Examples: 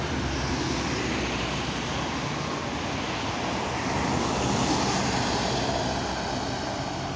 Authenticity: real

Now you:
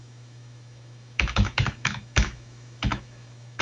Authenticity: fake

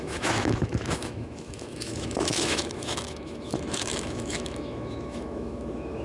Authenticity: fake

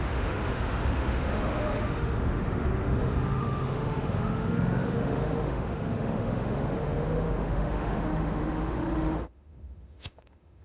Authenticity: fake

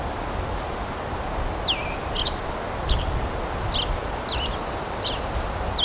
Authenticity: real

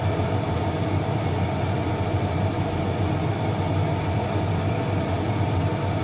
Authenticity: real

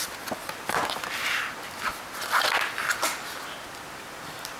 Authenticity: real